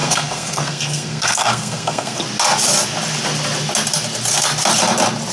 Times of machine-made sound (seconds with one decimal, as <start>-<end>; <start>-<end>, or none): 0.0-2.2